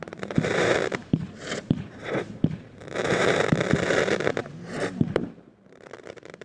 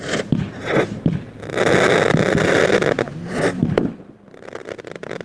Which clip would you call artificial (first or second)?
first